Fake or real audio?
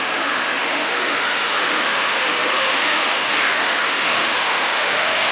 fake